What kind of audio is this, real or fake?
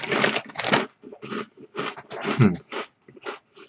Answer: real